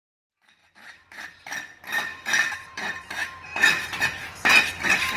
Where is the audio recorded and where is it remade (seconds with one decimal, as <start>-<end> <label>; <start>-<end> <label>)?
0.0-0.6 recorded; 0.6-1.3 remade; 1.3-2.1 recorded; 2.1-2.9 remade; 2.9-3.5 recorded; 3.5-4.6 remade; 4.6-5.2 recorded